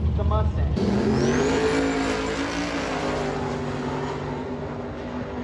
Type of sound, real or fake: real